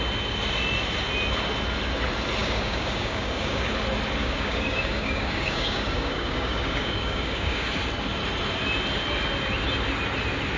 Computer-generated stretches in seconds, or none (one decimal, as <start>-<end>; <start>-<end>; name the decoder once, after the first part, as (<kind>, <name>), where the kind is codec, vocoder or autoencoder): 2.4-3.7 (codec, DAC); 4.2-7.7